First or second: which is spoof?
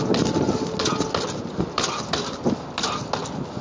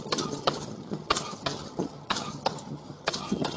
second